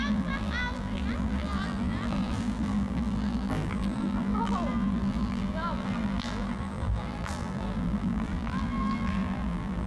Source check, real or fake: fake